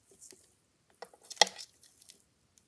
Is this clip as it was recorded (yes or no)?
yes